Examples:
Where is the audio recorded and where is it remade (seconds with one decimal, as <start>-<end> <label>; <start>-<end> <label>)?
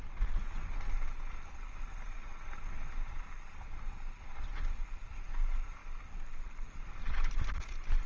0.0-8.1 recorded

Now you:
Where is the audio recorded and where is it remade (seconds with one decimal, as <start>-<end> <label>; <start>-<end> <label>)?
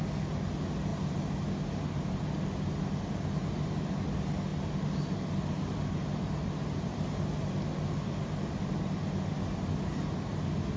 0.0-10.8 recorded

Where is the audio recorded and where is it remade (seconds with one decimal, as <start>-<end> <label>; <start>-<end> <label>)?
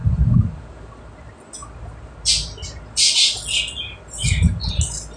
0.0-1.0 remade; 1.0-5.2 recorded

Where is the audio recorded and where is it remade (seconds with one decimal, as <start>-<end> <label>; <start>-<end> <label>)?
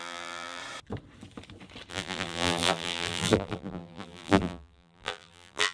0.0-0.6 remade; 0.6-1.9 recorded; 1.9-5.7 remade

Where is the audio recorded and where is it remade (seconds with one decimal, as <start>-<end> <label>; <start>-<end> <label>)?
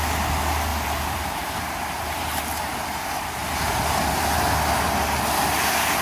0.0-0.7 recorded; 0.7-2.6 remade; 2.6-6.0 recorded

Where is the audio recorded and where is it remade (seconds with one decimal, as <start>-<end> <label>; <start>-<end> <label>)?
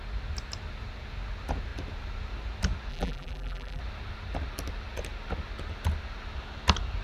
0.0-2.9 recorded; 2.9-3.8 remade; 3.8-7.0 recorded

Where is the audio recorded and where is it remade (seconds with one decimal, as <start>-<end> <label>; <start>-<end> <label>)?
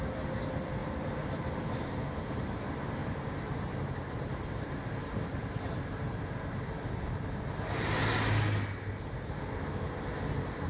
0.0-3.0 recorded; 3.0-6.5 remade; 6.5-10.7 recorded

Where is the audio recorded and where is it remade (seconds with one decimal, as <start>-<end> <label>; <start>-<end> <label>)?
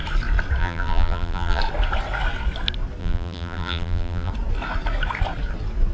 0.0-0.6 recorded; 0.6-1.6 remade; 1.6-3.0 recorded; 3.0-4.3 remade; 4.3-5.9 recorded